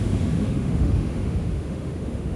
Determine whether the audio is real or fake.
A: fake